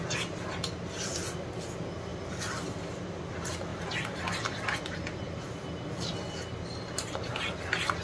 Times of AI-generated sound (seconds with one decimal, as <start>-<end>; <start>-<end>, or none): 2.1-3.3